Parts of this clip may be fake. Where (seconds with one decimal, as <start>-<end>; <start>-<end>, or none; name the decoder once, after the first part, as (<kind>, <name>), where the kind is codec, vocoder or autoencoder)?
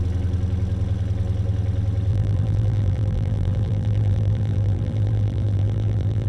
2.1-6.3 (vocoder, BigVGAN v2)